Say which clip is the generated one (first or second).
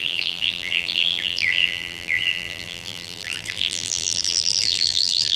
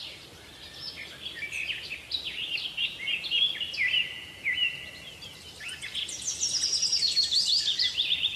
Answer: first